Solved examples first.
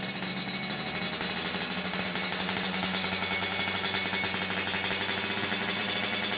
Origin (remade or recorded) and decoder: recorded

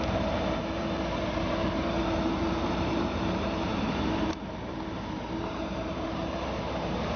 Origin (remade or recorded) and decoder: remade, vocoder, BigVGAN v2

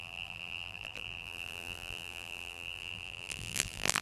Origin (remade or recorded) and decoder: remade, vocoder, BigVGAN v2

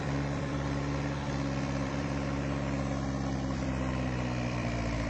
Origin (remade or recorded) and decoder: remade, vocoder, BigVGAN v2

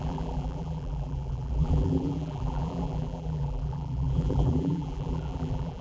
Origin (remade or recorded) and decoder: remade, vocoder, BigVGAN v2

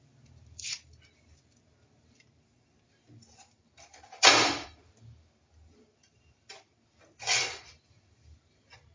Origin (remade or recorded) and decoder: remade, vocoder, BigVGAN v2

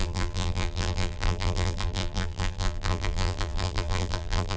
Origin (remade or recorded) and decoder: remade, vocoder, BigVGAN v2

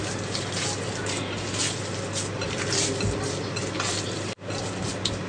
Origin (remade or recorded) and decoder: recorded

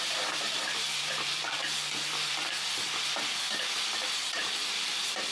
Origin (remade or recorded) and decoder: remade, vocoder, BigVGAN v2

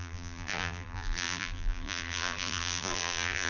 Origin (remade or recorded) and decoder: remade, vocoder, BigVGAN v2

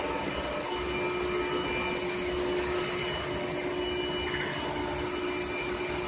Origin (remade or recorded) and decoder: recorded